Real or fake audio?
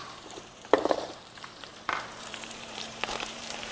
fake